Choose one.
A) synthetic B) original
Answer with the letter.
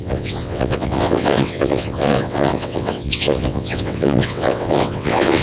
A